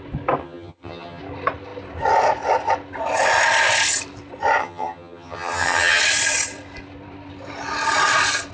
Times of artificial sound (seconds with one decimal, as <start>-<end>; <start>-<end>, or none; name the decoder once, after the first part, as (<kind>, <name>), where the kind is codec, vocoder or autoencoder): 0.4-1.2 (vocoder, HiFi-GAN); 4.6-6.0